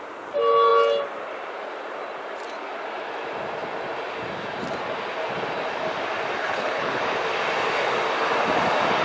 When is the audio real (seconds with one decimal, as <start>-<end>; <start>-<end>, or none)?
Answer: 0.0-6.4; 7.0-9.0